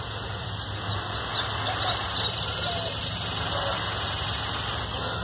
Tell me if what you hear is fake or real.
real